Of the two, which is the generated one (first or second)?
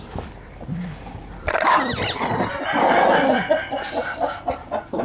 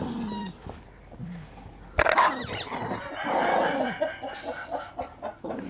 first